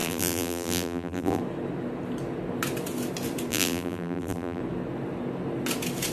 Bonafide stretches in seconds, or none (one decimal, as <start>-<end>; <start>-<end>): 1.4-3.5; 4.6-6.1